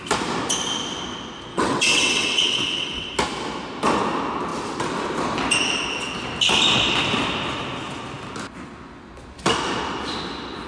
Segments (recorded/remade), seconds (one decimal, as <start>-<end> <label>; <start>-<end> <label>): 0.0-1.5 recorded; 1.5-3.1 remade; 3.1-10.7 recorded